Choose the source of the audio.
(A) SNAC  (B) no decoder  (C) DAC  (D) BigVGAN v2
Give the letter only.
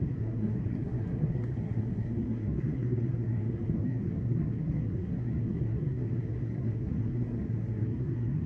A